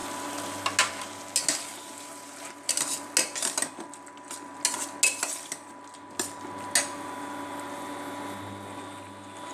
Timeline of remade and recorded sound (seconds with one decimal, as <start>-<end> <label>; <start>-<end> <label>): 0.0-9.5 recorded